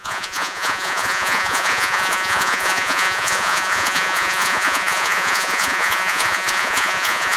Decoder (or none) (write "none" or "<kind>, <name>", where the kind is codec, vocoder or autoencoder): vocoder, Vocos